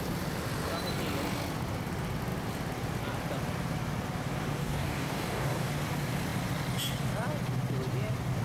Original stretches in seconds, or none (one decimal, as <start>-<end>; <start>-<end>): 0.0-4.6; 5.7-8.4